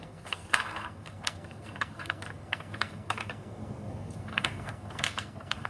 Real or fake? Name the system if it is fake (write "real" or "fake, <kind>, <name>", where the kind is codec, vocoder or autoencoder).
fake, codec, SNAC